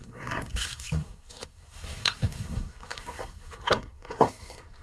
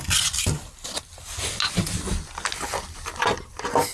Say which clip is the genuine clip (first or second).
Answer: second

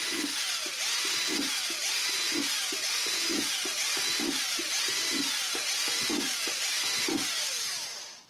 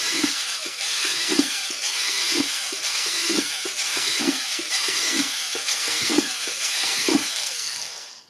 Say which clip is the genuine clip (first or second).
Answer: first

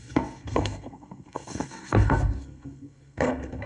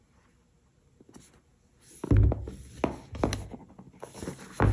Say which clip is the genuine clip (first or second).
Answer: second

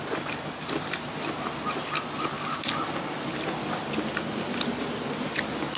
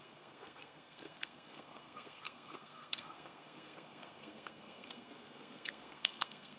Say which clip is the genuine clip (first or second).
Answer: first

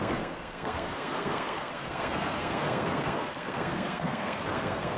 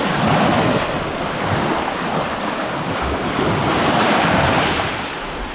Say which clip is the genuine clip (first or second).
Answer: second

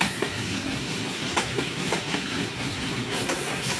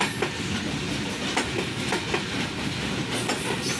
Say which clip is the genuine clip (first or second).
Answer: second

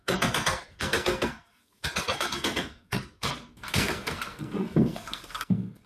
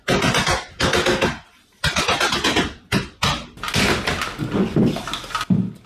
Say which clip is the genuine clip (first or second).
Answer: second